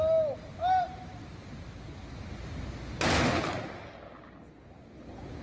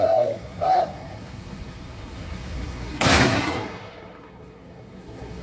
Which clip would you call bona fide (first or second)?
first